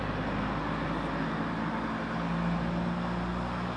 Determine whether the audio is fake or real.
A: real